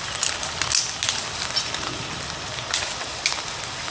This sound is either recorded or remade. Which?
recorded